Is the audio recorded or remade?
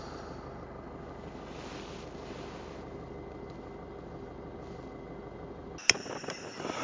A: recorded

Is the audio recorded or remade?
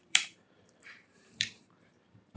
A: remade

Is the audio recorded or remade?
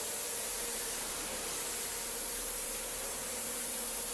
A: remade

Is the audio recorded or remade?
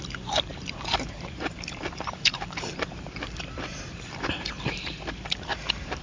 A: remade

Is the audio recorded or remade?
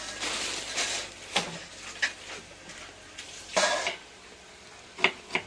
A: recorded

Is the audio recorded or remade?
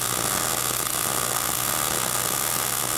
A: recorded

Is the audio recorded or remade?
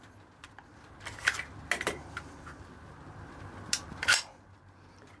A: recorded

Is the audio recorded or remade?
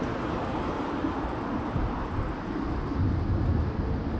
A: recorded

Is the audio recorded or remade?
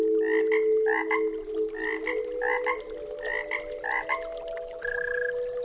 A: recorded